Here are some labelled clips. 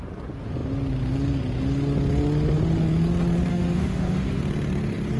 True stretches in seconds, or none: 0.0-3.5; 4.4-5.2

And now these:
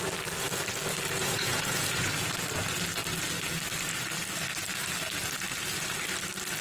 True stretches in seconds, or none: 0.0-1.2; 2.1-6.6

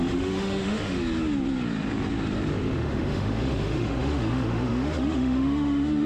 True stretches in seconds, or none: 1.0-2.5

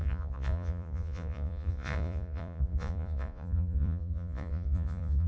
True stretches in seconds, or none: none

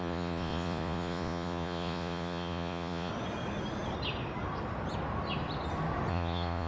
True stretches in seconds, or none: 3.1-6.1